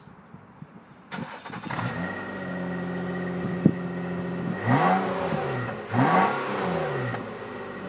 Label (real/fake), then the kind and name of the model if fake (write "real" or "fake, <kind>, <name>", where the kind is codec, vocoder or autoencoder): real